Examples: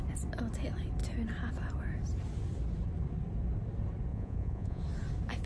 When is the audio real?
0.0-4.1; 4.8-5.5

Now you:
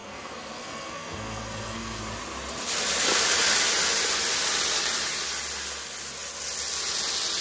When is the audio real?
2.0-7.4

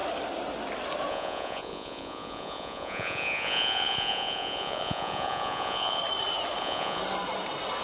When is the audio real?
0.0-1.1; 6.0-6.6; 7.0-7.8

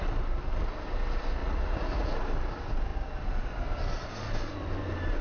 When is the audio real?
0.0-1.4; 2.1-5.2

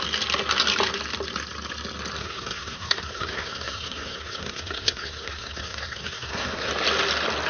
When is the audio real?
0.0-2.2; 6.7-7.5

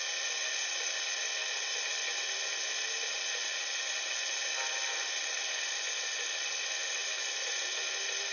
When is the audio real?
0.0-8.3

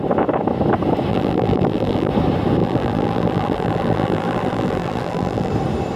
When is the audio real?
0.0-1.1; 2.1-2.6; 5.5-6.0

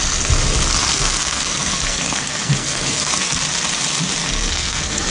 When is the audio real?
0.0-0.9; 3.4-4.2